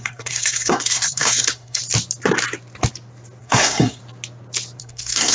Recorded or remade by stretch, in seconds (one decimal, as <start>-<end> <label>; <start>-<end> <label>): 0.0-1.8 remade; 1.8-3.4 recorded; 3.4-4.0 remade; 4.0-4.8 recorded; 4.8-5.3 remade